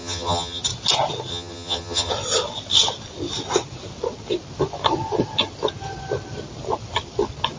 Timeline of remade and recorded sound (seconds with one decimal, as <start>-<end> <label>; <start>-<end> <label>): 0.0-0.6 remade; 0.6-1.3 recorded; 1.3-2.1 remade; 2.1-7.6 recorded